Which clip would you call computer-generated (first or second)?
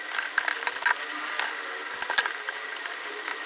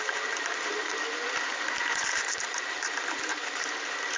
second